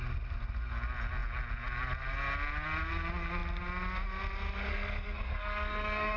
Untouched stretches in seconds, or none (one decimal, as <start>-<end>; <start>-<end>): 0.0-4.7

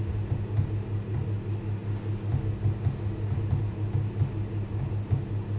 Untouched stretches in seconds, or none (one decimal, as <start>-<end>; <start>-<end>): 0.0-5.6

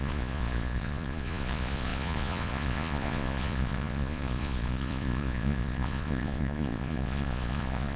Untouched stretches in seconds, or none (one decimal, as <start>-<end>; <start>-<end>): none